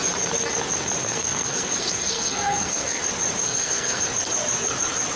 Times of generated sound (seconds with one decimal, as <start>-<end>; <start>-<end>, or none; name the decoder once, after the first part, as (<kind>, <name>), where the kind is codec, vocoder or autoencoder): 1.0-3.0 (codec, SNAC); 3.4-4.0